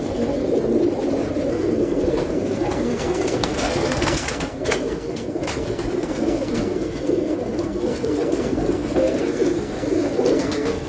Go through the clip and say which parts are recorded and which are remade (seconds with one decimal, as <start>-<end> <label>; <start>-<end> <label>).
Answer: 0.0-0.4 remade; 0.4-1.5 recorded; 1.5-10.9 remade